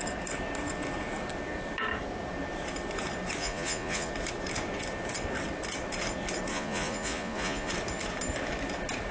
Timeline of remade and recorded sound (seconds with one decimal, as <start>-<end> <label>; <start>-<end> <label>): 0.0-3.4 recorded; 3.4-4.1 remade; 4.1-6.5 recorded; 6.5-7.7 remade; 7.7-9.1 recorded